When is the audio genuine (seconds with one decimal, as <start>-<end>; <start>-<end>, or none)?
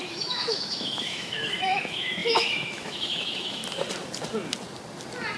3.6-5.4